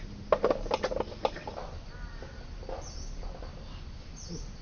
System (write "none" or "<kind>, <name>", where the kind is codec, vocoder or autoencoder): none